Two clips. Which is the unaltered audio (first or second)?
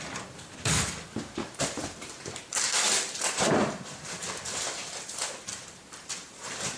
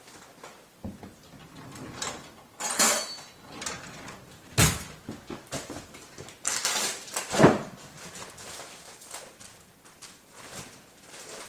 second